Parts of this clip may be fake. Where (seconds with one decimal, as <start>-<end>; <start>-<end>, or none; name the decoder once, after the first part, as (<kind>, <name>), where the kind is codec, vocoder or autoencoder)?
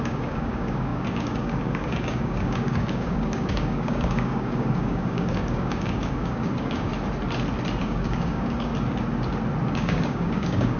0.0-6.9 (codec, DAC); 7.8-8.7; 9.7-10.8